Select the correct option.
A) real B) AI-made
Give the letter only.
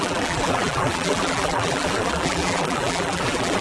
B